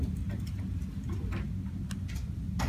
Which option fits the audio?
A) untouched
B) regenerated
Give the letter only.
A